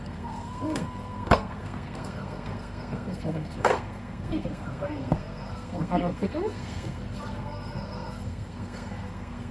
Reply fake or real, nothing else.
fake